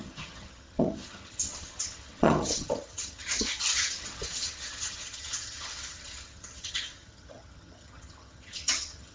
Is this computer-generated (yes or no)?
yes